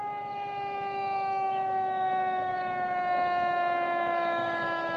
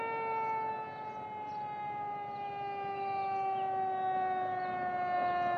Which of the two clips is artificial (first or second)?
first